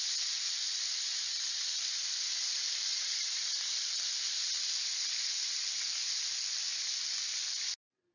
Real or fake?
real